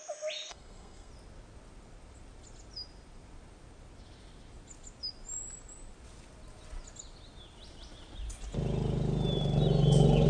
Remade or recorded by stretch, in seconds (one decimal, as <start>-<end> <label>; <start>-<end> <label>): 0.0-0.5 recorded; 0.5-1.1 remade; 1.1-10.3 recorded